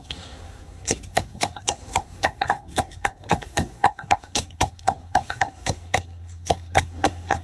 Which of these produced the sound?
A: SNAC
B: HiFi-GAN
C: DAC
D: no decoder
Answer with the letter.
A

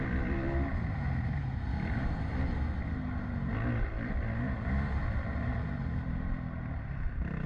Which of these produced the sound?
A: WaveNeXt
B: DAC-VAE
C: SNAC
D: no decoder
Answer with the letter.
D